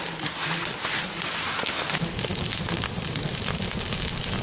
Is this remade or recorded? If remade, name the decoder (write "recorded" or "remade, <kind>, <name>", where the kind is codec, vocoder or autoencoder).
recorded